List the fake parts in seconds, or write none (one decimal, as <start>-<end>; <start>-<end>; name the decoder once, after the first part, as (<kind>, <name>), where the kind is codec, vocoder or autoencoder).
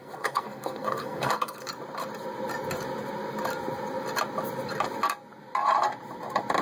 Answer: 0.0-1.7 (codec, SNAC)